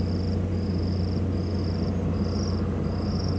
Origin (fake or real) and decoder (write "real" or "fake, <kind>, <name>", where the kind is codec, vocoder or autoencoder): real